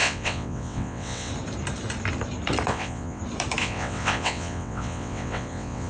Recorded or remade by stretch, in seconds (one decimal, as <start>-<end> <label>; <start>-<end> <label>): 0.0-1.3 remade; 1.3-2.7 recorded; 2.7-3.2 remade; 3.2-3.6 recorded; 3.6-5.9 remade